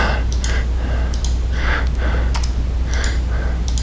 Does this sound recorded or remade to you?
recorded